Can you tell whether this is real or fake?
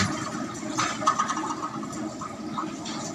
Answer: real